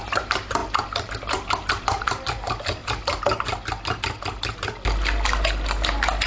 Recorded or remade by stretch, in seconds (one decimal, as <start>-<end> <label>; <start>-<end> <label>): 0.0-2.8 remade; 2.8-6.3 recorded